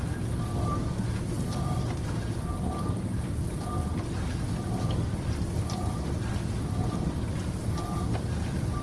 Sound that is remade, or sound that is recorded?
recorded